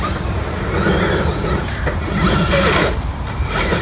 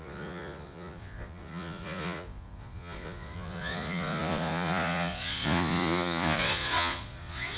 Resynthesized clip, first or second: second